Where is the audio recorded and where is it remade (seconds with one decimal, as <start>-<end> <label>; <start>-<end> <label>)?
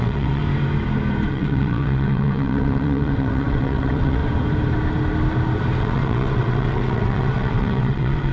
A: 0.0-0.4 remade; 0.4-1.3 recorded; 1.3-4.2 remade; 4.2-5.8 recorded; 5.8-8.3 remade